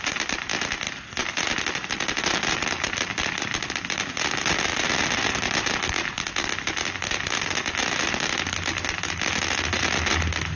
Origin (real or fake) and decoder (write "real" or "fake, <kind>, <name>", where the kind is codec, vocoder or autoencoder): real